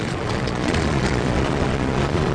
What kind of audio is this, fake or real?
fake